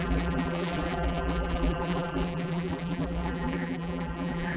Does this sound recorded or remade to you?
remade